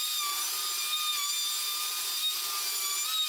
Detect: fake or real real